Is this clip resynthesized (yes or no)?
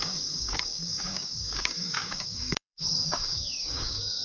yes